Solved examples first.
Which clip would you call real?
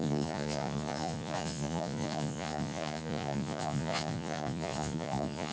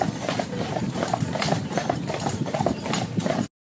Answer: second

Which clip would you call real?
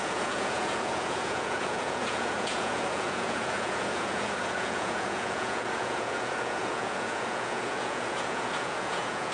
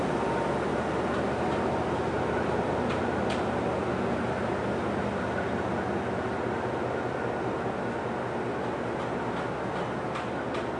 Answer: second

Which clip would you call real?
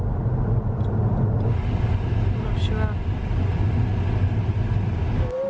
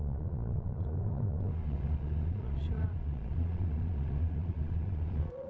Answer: first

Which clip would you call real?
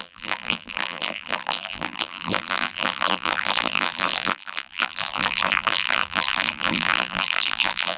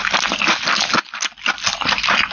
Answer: second